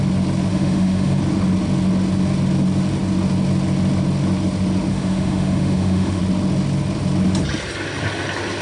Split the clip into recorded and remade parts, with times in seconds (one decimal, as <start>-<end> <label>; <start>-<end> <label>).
0.0-0.5 recorded; 0.5-1.2 remade; 1.2-4.9 recorded; 4.9-6.2 remade; 6.2-8.6 recorded